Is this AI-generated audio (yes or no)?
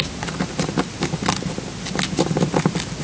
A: no